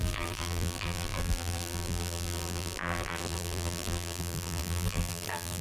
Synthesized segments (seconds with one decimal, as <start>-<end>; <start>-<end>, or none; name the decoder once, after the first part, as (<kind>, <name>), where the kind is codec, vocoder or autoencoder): 0.0-5.6 (vocoder, BigVGAN v2)